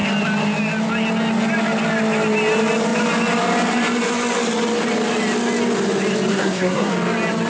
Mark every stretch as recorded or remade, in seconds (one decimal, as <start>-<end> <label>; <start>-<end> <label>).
0.0-6.3 recorded; 6.3-6.9 remade; 6.9-7.5 recorded